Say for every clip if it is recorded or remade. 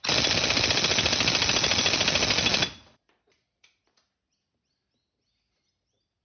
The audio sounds recorded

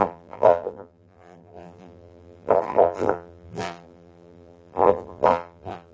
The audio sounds remade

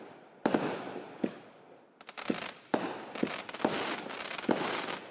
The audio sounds recorded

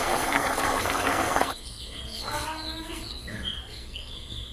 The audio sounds remade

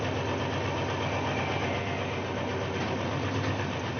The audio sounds recorded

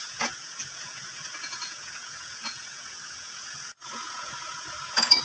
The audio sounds remade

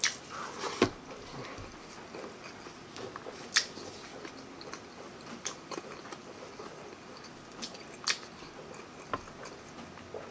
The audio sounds recorded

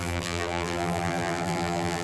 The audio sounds remade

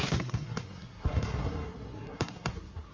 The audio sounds remade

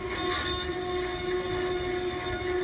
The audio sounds recorded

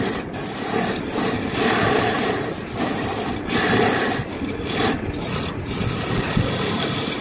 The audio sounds recorded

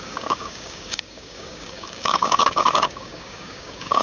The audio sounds remade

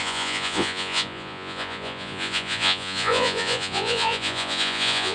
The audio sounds remade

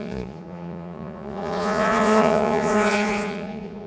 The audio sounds remade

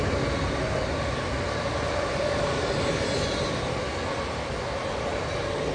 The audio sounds recorded